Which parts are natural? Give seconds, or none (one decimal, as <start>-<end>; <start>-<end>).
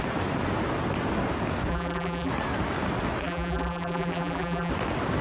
0.0-1.7; 2.3-3.2; 4.7-5.2